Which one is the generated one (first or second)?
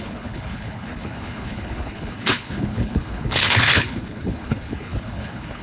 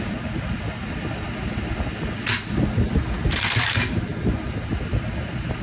first